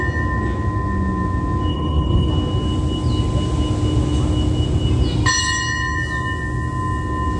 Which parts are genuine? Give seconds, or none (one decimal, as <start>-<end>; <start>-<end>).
0.0-1.7; 2.3-7.4